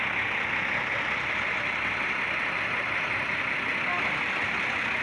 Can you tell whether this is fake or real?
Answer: real